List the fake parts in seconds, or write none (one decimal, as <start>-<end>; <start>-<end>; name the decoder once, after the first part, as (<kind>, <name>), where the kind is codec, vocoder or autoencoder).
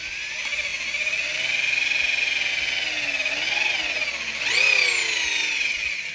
none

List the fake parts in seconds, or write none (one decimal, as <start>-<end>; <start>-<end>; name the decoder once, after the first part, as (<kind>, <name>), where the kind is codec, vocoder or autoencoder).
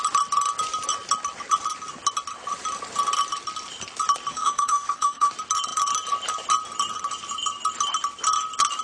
4.3-5.3 (autoencoder, DAC-VAE)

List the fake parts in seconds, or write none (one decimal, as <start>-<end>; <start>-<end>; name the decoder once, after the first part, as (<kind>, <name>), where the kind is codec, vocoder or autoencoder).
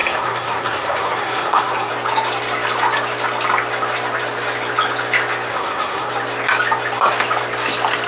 0.0-1.9 (codec, SNAC); 5.5-6.1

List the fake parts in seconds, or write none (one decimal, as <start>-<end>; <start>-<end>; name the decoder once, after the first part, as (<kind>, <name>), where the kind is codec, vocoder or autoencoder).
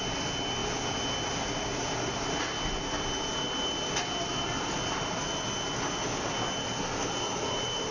none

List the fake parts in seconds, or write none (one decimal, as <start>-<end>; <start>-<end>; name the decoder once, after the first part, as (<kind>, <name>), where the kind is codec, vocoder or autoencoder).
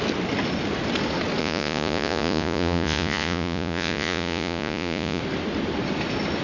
1.4-5.2 (vocoder, Vocos)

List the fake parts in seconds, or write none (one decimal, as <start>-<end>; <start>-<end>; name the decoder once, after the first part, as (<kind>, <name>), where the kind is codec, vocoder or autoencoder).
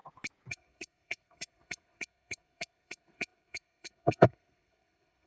0.5-5.3 (codec, SNAC)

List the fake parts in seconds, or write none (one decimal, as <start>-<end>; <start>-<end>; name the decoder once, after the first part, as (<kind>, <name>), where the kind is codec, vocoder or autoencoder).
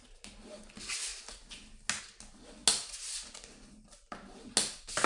none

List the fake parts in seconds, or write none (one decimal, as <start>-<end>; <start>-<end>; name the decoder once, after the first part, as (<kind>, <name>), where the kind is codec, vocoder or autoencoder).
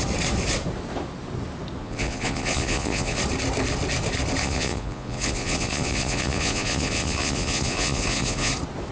1.8-3.2 (vocoder, Vocos); 4.4-8.5